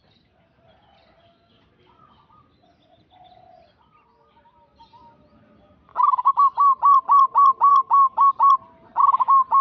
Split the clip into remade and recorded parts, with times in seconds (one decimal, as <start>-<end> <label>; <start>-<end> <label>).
0.0-5.9 recorded; 5.9-6.4 remade; 6.4-7.7 recorded; 7.7-8.3 remade; 8.3-9.6 recorded